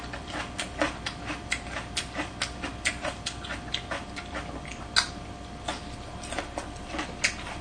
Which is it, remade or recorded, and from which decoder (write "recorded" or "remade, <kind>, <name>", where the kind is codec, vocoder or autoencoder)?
recorded